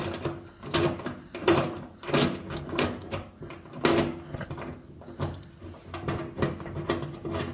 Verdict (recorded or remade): recorded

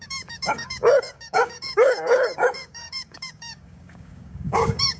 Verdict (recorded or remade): remade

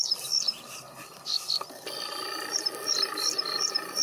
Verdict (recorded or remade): remade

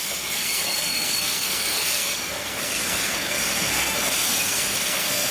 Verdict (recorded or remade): remade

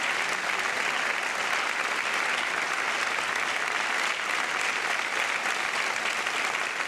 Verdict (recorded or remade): recorded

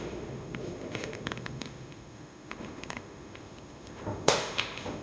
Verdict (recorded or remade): remade